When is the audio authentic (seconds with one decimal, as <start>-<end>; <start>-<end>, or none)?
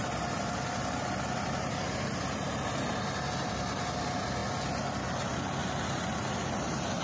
0.0-7.0